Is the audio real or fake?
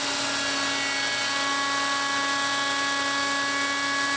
real